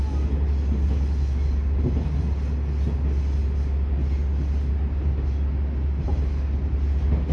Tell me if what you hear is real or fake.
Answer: real